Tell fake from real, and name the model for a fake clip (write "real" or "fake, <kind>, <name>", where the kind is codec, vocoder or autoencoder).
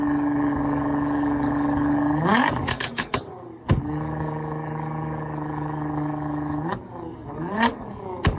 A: fake, codec, DAC